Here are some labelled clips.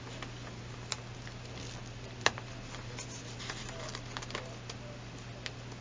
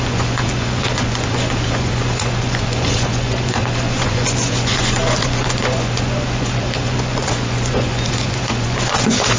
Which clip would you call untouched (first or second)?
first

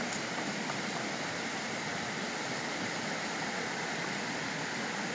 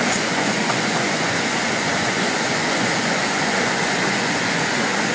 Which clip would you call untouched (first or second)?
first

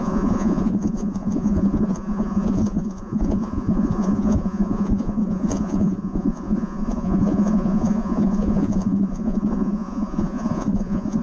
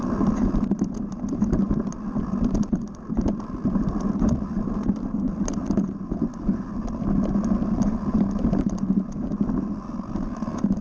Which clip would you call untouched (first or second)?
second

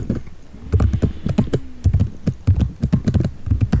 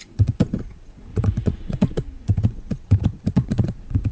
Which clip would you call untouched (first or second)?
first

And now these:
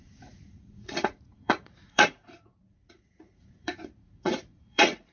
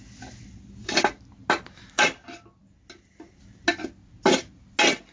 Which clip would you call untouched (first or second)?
second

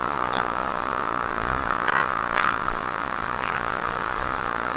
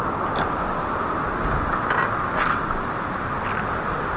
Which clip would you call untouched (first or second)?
second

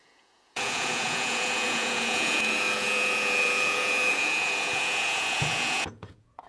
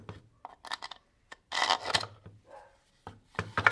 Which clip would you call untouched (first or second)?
second